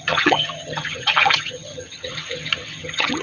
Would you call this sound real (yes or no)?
no